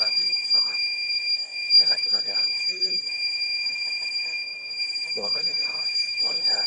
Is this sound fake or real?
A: fake